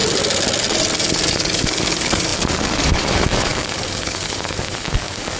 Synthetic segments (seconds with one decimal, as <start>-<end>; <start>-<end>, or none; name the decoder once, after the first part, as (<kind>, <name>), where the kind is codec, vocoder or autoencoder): 1.3-5.4 (codec, DAC)